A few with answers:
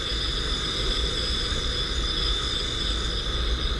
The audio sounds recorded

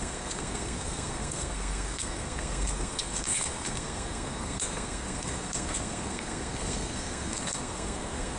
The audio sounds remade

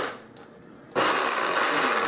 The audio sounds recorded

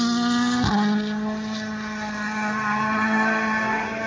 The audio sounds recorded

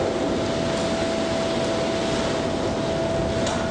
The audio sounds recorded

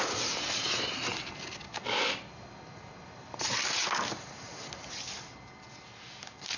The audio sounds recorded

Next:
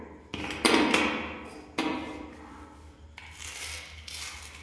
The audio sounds recorded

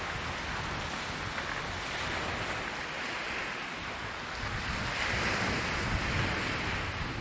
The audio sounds recorded